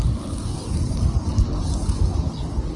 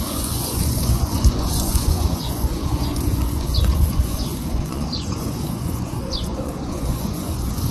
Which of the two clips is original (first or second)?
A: first